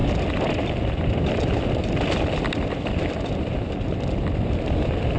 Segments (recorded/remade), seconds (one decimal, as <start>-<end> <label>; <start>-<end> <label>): 0.0-5.2 recorded